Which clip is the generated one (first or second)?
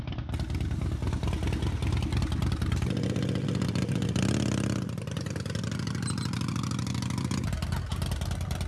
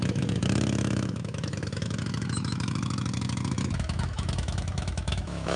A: second